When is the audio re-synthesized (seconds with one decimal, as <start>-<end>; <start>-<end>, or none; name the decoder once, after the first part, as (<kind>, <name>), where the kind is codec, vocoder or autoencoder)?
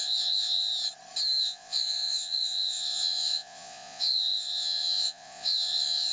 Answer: 0.0-0.7 (vocoder, Vocos); 1.4-6.1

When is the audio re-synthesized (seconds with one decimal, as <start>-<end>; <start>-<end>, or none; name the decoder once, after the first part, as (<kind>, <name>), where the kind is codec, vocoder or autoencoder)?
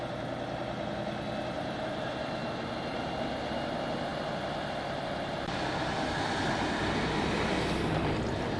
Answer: none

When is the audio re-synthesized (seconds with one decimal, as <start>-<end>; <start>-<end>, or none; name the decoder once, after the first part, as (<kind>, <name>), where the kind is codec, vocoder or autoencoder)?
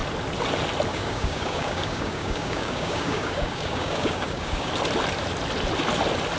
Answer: 0.9-4.7 (codec, DAC)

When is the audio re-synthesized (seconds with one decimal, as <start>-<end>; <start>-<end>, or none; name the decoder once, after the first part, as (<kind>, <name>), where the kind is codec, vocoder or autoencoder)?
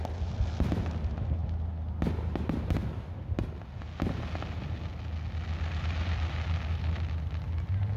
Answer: none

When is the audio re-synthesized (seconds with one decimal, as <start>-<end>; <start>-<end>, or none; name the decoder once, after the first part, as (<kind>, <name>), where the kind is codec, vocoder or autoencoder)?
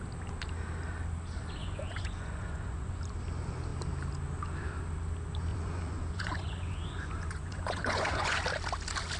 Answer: 1.6-3.0 (vocoder, Vocos); 5.5-8.4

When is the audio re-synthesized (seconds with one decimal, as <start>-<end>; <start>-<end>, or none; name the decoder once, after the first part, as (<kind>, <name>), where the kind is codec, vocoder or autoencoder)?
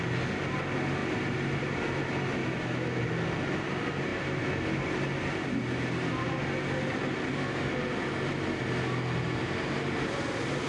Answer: 2.4-3.0 (autoencoder, DAC-VAE)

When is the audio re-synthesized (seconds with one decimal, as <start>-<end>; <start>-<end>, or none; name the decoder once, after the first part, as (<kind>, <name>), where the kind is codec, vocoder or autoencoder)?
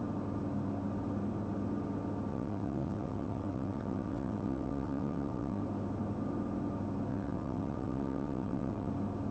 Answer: 2.3-5.6 (vocoder, WaveNeXt); 7.1-8.9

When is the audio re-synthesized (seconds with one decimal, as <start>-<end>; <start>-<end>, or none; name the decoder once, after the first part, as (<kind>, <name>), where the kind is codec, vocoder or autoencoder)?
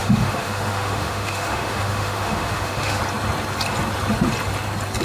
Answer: 0.0-3.0 (autoencoder, DAC-VAE)